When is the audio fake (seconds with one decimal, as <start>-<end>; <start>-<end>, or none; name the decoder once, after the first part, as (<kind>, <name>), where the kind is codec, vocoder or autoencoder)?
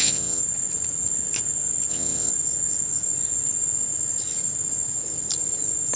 0.0-0.4 (vocoder, WaveNeXt); 1.9-2.3